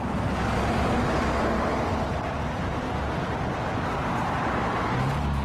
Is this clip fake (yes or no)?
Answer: no